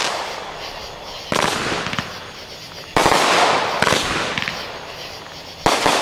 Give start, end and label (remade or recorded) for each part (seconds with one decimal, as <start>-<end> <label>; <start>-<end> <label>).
0.0-0.8 recorded; 0.8-1.6 remade; 1.6-6.0 recorded